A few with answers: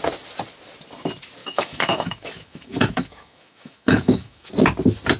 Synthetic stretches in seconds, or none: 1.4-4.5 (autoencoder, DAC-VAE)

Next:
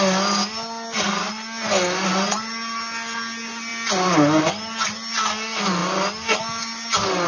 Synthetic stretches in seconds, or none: none

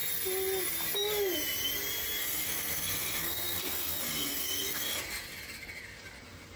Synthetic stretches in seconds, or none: 2.2-5.0 (codec, SNAC)

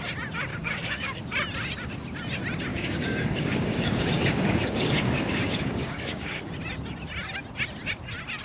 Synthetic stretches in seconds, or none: 0.5-1.2 (codec, DAC); 2.7-6.5

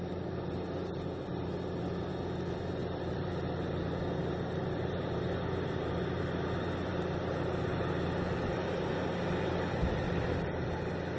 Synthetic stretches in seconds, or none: 2.8-3.3 (vocoder, BigVGAN v2); 4.2-6.0

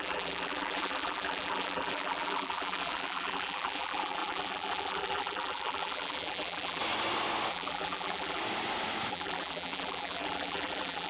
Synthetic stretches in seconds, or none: 0.0-6.8 (vocoder, BigVGAN v2); 7.5-8.4; 9.1-11.1

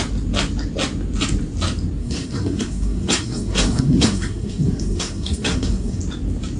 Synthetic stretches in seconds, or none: 2.0-6.0 (codec, SNAC)